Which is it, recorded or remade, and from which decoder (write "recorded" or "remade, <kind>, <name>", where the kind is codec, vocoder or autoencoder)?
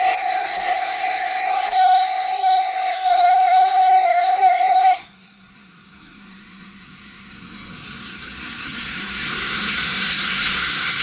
remade, codec, SNAC